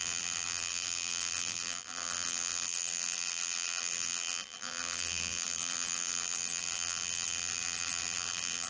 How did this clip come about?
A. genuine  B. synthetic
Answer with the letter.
B